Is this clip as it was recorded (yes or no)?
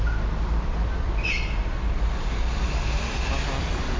yes